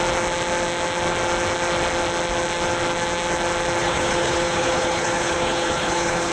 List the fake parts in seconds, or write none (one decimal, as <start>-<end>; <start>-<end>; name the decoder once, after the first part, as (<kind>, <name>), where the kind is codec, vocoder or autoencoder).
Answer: 3.8-6.3 (codec, HILCodec)